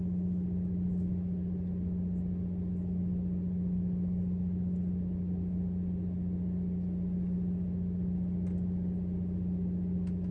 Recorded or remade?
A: recorded